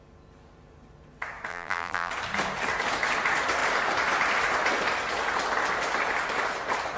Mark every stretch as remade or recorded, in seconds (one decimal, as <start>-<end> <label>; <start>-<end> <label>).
0.0-1.5 recorded; 1.5-2.1 remade; 2.1-7.0 recorded